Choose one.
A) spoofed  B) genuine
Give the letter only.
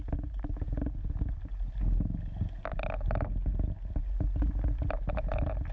B